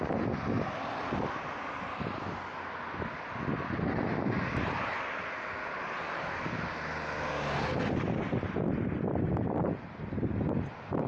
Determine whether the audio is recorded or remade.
recorded